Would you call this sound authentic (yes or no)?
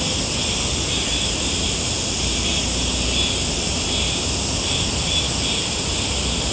yes